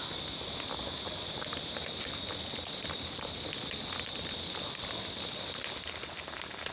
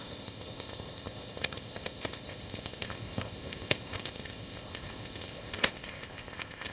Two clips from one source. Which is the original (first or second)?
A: first